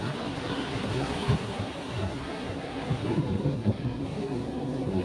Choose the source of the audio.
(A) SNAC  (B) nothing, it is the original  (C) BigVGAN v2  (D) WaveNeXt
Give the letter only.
A